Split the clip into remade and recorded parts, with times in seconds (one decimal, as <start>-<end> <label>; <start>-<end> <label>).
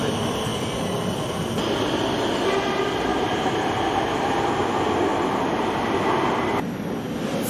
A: 0.0-3.1 recorded; 3.1-4.4 remade; 4.4-5.1 recorded; 5.1-5.7 remade; 5.7-7.5 recorded